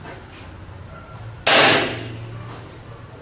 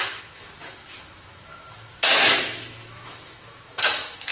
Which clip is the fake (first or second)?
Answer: second